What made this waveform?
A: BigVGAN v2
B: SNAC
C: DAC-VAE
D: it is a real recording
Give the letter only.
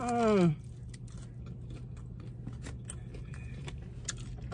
D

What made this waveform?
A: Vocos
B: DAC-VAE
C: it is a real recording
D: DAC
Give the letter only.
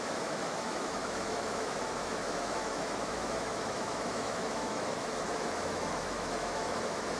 B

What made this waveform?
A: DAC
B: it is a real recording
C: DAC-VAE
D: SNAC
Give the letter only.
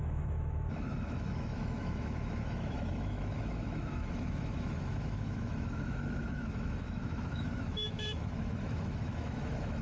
C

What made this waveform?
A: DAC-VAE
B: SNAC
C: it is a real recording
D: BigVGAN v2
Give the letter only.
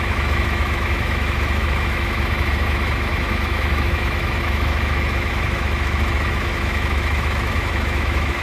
A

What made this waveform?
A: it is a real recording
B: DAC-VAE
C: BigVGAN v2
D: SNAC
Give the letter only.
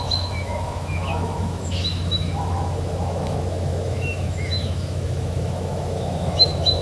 B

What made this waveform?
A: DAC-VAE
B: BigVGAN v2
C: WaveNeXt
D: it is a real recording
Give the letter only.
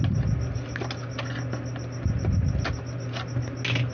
D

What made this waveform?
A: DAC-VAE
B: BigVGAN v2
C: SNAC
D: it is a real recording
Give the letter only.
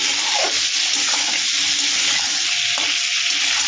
D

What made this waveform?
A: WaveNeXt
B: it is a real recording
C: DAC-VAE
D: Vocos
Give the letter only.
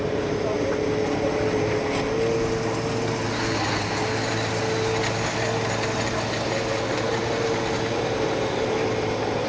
B